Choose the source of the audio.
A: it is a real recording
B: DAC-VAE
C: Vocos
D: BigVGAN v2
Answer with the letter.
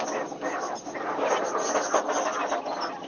A